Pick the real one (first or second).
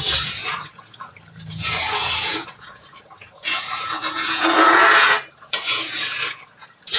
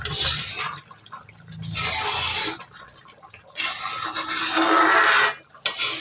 second